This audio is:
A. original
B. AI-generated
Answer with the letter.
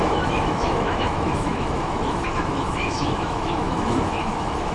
B